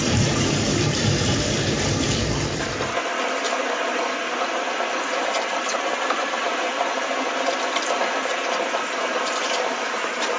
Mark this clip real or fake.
fake